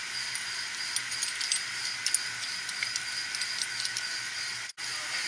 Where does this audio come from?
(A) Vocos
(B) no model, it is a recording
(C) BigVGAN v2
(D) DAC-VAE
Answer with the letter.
B